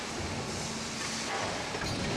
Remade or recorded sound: recorded